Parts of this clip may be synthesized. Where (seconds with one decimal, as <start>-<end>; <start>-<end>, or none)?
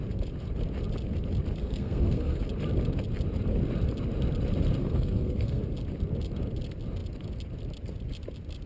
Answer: 1.6-2.4; 4.8-5.6